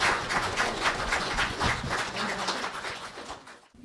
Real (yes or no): no